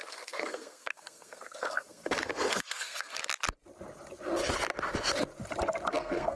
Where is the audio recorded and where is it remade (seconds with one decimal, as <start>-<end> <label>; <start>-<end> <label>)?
0.0-3.2 remade; 3.2-5.9 recorded; 5.9-6.4 remade